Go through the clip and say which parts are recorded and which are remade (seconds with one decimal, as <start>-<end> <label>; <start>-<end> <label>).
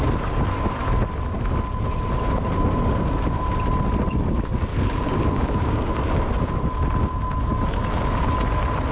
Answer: 0.0-4.7 recorded; 4.7-5.9 remade; 5.9-8.9 recorded